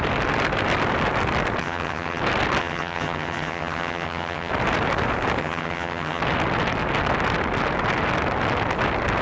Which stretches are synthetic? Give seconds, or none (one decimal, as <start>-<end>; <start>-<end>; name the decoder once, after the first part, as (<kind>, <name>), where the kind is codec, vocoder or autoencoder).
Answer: 1.6-2.2 (vocoder, HiFi-GAN); 2.6-4.5; 5.4-6.2